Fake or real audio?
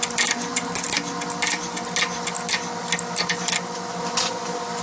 real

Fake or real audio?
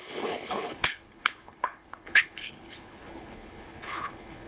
fake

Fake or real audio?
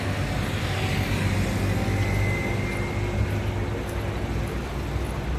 real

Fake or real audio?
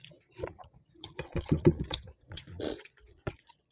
fake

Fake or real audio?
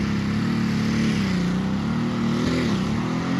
real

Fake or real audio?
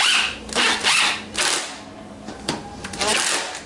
real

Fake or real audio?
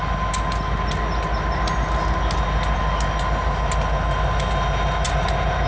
real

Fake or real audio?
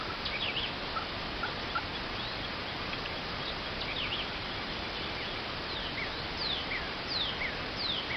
real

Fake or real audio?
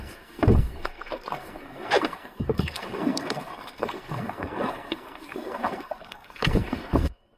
fake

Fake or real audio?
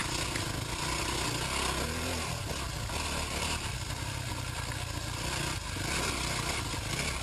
real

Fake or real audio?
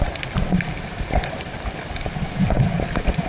real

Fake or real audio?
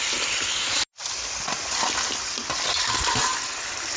real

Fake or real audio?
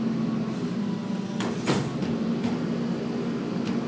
real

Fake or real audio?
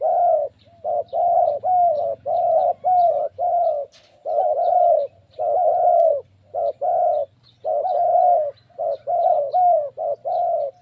real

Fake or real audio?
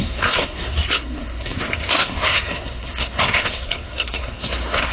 fake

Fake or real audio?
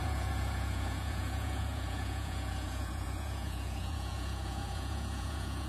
fake